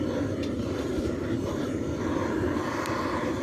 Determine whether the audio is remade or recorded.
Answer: recorded